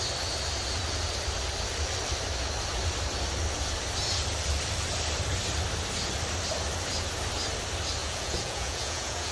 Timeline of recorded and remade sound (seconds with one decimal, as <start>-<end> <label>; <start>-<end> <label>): 0.0-8.0 recorded; 8.0-9.3 remade